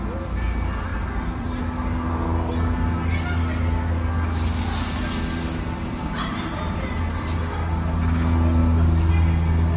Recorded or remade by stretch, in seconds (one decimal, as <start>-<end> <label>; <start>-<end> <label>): 0.0-0.9 recorded; 0.9-1.6 remade; 1.6-5.5 recorded; 5.5-7.4 remade; 7.4-9.8 recorded